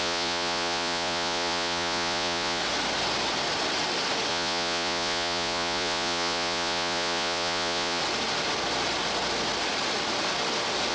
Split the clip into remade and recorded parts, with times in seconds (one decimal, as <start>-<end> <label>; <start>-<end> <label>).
0.0-2.6 remade; 2.6-4.3 recorded; 4.3-8.0 remade; 8.0-10.9 recorded